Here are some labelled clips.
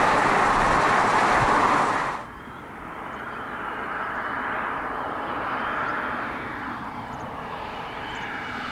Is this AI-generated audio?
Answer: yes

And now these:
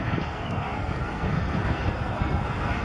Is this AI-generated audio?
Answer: yes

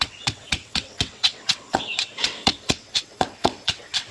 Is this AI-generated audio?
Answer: yes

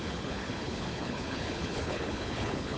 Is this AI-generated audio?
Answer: yes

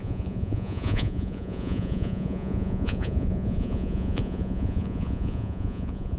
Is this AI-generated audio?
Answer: yes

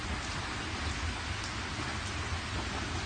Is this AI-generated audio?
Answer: no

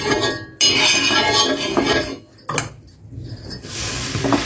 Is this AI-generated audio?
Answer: no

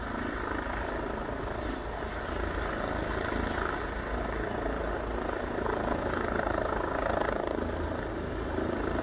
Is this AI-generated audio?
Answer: no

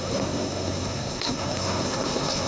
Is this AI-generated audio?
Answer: yes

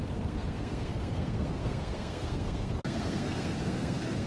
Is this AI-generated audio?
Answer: yes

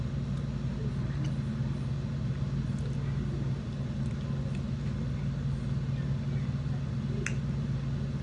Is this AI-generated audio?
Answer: no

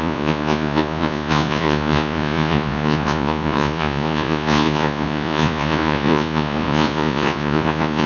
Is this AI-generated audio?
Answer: yes